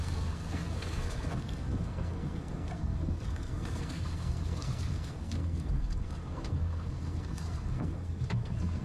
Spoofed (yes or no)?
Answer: yes